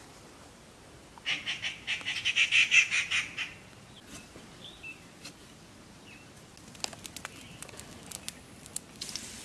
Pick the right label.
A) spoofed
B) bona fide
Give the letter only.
B